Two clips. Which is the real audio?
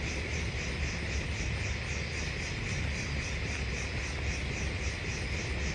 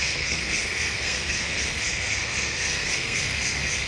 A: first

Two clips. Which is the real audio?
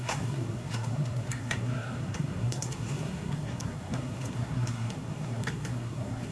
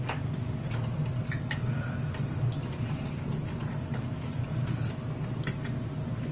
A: second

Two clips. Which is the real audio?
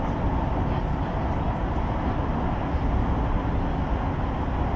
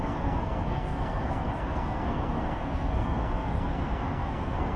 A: first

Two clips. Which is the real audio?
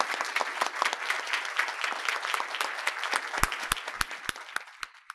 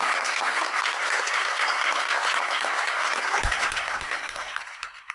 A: first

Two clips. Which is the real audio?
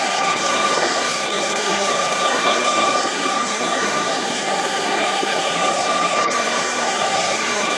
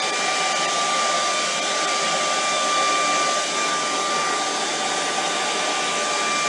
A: second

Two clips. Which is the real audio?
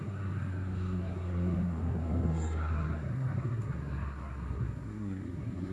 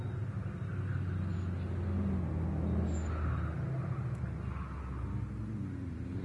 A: second